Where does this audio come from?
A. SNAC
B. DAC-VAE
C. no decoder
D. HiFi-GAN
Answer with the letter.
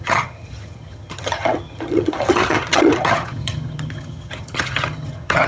D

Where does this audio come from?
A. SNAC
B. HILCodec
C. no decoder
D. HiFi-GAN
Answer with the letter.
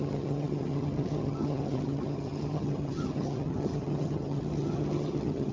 D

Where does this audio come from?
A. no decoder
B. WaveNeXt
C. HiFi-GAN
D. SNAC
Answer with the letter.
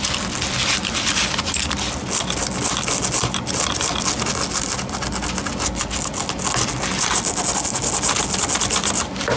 A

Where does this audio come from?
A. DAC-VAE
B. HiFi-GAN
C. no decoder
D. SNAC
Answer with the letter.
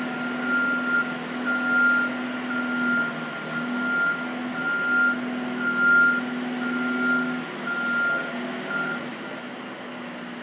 C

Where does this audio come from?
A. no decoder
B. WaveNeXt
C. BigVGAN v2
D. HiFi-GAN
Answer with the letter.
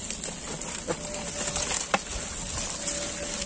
A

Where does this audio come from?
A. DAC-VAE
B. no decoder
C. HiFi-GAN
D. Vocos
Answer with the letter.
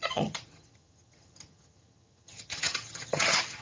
C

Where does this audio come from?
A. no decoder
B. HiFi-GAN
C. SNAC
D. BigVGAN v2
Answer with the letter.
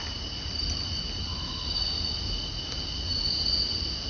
A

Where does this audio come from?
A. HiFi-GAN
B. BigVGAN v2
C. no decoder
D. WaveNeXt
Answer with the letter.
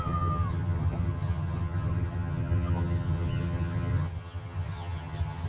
A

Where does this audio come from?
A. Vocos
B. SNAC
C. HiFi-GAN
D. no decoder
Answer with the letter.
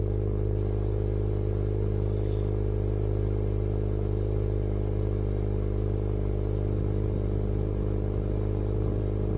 D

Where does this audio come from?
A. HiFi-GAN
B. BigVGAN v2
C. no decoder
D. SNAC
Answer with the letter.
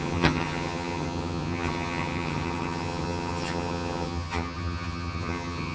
A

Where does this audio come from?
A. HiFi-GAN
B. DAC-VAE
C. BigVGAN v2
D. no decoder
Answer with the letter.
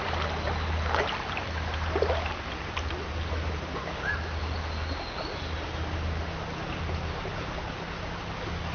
D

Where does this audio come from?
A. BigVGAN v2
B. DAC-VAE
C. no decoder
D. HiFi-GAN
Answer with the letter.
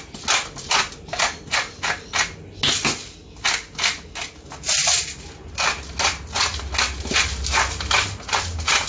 C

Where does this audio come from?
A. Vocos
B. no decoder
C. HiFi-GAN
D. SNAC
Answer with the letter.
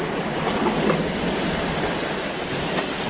B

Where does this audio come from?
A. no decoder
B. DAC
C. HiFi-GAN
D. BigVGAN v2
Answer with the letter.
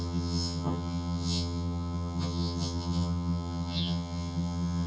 C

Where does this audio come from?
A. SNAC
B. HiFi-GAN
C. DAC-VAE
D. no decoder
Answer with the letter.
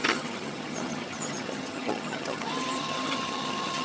B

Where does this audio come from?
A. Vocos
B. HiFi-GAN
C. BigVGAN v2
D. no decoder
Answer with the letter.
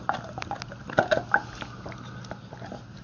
D